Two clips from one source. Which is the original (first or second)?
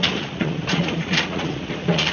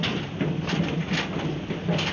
second